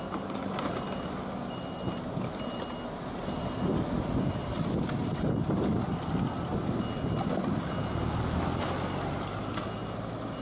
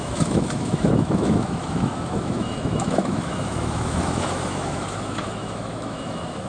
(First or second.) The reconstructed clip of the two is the second